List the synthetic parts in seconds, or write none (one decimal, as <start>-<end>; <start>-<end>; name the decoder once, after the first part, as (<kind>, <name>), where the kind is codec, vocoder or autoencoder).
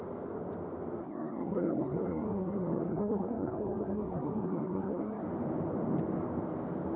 1.0-5.2 (codec, SNAC)